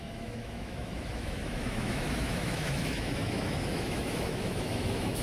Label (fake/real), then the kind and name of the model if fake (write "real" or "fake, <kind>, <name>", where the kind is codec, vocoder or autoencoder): fake, autoencoder, DAC-VAE